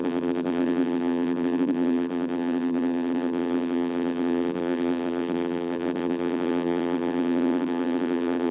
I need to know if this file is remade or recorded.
remade